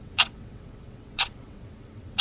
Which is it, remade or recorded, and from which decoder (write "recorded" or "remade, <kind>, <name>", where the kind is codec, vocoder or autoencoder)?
remade, vocoder, WaveNeXt